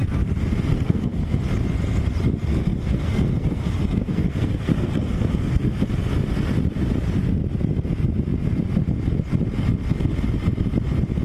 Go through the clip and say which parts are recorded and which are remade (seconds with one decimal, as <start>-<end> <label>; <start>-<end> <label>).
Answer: 0.0-0.7 recorded; 0.7-1.4 remade; 1.4-2.5 recorded; 2.5-5.7 remade; 5.7-11.2 recorded